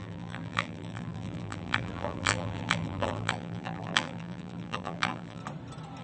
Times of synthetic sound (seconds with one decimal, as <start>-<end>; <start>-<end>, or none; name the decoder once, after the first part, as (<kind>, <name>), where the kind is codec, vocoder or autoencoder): 0.0-5.4 (vocoder, BigVGAN v2)

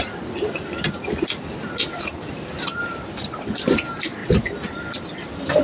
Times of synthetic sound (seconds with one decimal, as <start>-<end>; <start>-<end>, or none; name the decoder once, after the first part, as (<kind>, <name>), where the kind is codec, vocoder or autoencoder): none